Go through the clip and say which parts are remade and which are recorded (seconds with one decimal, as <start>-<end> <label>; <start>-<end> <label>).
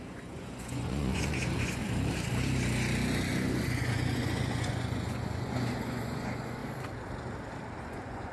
0.0-1.8 remade; 1.8-3.3 recorded; 3.3-6.6 remade; 6.6-7.8 recorded; 7.8-8.3 remade